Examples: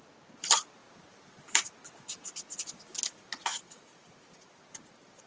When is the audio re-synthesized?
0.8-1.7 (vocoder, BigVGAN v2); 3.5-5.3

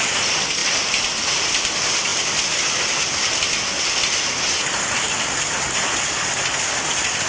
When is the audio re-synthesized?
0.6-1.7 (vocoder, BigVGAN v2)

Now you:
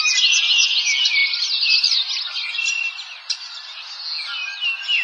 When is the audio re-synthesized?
none